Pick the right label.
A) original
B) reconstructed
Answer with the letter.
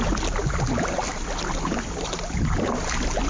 A